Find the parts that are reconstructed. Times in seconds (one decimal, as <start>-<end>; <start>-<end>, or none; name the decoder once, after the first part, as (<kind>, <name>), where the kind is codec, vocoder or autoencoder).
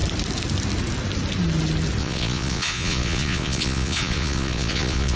2.0-5.2 (vocoder, Vocos)